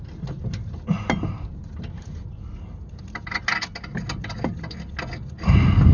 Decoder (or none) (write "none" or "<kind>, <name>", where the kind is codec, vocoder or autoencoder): none